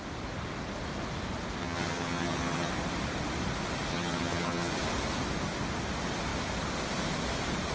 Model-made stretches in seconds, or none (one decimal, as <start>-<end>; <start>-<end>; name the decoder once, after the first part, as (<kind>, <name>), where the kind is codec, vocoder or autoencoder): 1.6-2.7 (vocoder, HiFi-GAN); 3.9-4.7